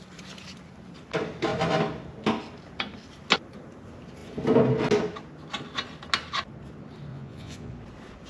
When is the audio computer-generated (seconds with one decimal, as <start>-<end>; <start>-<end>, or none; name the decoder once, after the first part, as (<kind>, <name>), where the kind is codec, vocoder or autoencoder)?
7.1-7.7 (vocoder, Vocos)

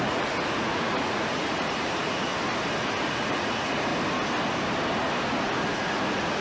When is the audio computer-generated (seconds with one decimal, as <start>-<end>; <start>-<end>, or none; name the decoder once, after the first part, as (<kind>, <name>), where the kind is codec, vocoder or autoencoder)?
0.0-2.3 (vocoder, Vocos); 2.8-3.9; 5.4-6.4

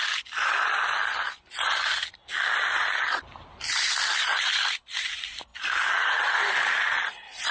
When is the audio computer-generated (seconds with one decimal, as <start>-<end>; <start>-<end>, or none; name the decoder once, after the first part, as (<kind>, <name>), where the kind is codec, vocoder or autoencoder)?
none